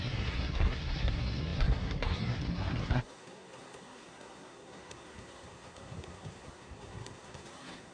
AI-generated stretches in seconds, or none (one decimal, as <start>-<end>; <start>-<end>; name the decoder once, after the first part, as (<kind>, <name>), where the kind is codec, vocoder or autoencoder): 0.0-7.9 (codec, SNAC)